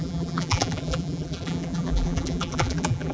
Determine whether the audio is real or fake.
fake